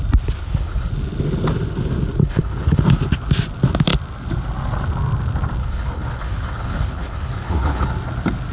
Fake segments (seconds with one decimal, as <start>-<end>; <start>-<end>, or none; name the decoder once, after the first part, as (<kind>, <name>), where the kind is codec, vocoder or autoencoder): 0.4-0.9 (codec, HILCodec); 2.2-2.8; 5.6-7.9